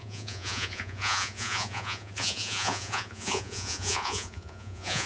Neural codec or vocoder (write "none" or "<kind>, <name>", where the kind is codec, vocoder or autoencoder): vocoder, Vocos